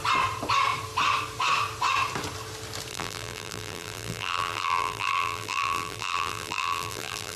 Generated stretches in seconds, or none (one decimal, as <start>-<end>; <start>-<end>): 2.9-7.4